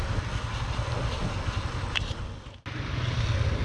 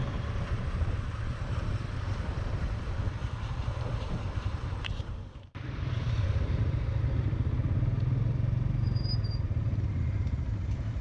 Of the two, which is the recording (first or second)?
first